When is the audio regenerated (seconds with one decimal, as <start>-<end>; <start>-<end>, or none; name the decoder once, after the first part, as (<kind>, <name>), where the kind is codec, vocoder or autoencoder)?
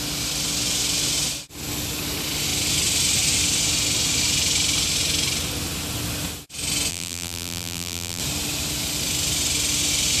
6.9-8.2 (vocoder, BigVGAN v2)